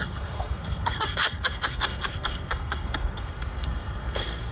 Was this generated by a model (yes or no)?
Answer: yes